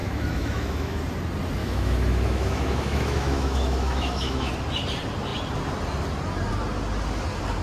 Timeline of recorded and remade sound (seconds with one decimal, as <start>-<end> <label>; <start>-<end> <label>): 0.0-1.0 remade; 1.0-1.6 recorded; 1.6-4.5 remade; 4.5-7.6 recorded